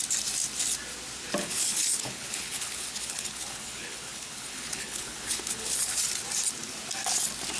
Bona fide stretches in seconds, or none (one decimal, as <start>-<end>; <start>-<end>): 0.0-1.4; 6.0-7.6